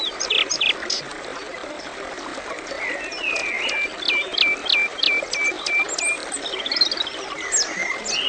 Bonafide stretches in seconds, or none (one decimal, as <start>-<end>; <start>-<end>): 0.0-8.3